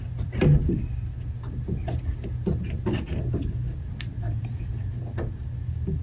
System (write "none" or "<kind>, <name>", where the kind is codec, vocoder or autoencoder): none